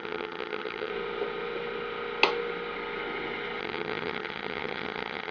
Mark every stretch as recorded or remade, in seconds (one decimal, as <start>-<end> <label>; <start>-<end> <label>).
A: 0.0-0.9 remade; 0.9-3.6 recorded; 3.6-5.3 remade